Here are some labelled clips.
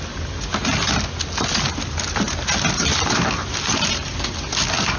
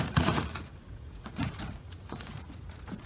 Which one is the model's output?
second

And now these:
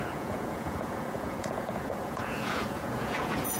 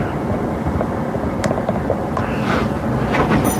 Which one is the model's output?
first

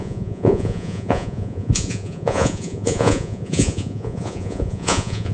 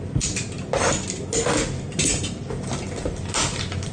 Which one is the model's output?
first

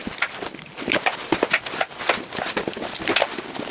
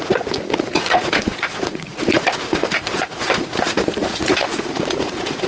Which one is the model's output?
second